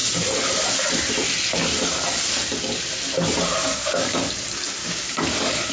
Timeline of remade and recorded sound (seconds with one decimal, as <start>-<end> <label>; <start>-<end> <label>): 0.0-3.6 recorded; 3.6-4.3 remade; 4.3-4.8 recorded; 4.8-5.7 remade